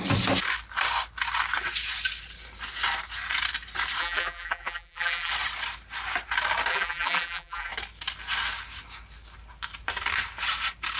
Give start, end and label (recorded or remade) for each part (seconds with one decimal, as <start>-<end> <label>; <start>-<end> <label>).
0.0-4.0 recorded; 4.0-5.3 remade; 5.3-6.7 recorded; 6.7-7.7 remade; 7.7-11.0 recorded